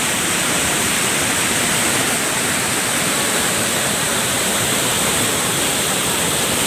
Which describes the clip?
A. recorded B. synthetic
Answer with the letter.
B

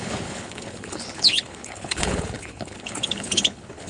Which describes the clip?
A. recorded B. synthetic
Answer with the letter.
B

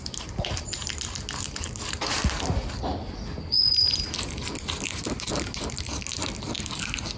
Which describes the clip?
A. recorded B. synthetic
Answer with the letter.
A